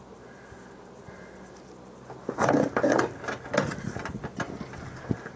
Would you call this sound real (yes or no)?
yes